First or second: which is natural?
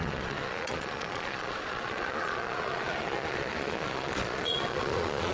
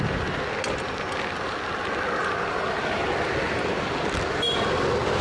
second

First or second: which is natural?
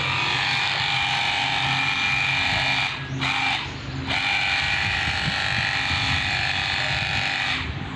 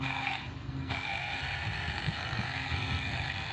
first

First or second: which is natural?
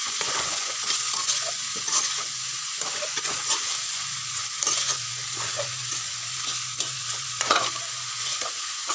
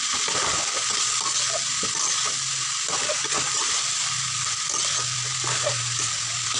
second